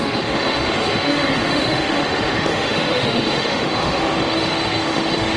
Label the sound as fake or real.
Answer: fake